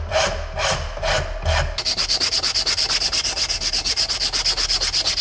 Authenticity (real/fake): real